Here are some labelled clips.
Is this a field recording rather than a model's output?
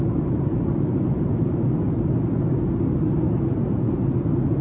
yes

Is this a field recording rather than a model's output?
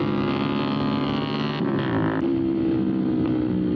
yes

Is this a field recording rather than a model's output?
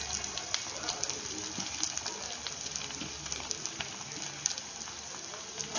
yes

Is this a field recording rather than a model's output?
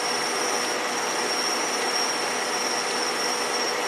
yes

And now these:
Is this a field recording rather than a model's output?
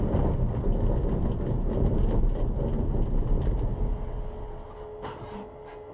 yes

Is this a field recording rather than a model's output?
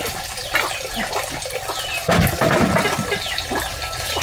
yes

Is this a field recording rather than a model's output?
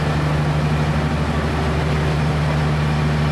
yes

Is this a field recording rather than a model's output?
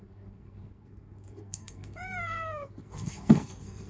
no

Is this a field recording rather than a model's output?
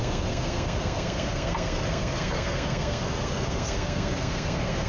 no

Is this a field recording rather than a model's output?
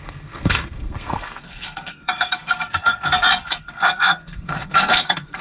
no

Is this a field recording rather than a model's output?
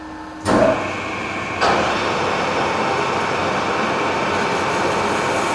yes